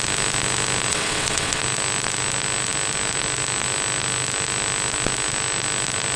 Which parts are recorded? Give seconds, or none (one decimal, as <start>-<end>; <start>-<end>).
0.0-0.9; 1.6-6.2